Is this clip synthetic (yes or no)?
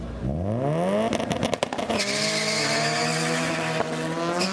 no